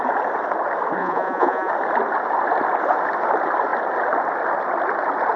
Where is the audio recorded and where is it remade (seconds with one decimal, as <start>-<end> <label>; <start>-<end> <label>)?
0.0-1.0 recorded; 1.0-1.7 remade; 1.7-5.4 recorded